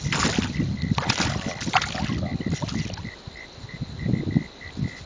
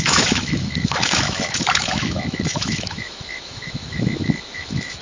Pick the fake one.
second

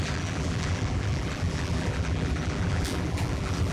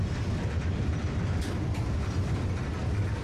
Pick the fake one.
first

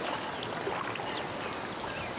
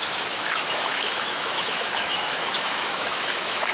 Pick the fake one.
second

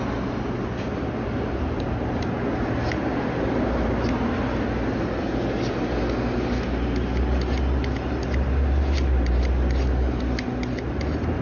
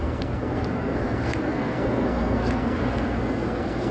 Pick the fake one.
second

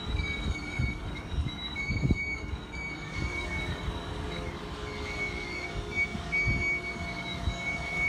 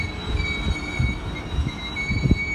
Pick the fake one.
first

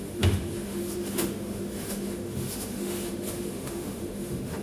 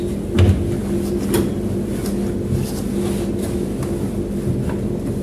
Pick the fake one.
first